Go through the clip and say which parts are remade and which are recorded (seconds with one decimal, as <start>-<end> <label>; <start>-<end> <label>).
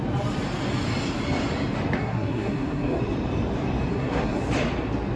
0.0-2.0 recorded; 2.0-3.0 remade; 3.0-3.9 recorded; 3.9-4.4 remade; 4.4-5.2 recorded